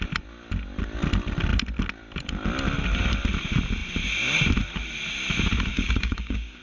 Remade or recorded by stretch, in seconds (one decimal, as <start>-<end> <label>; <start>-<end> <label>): 0.0-5.7 recorded; 5.7-6.6 remade